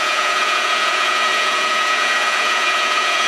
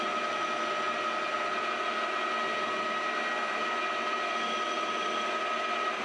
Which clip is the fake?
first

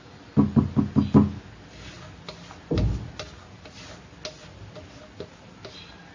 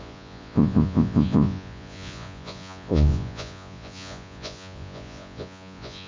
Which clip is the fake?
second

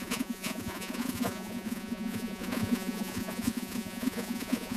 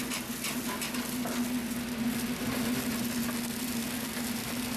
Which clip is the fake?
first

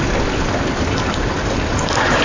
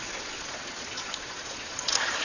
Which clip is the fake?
second